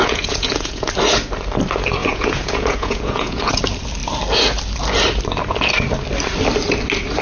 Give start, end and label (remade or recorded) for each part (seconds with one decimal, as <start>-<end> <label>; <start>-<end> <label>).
0.0-0.9 remade; 0.9-2.0 recorded; 2.0-3.6 remade; 3.6-7.2 recorded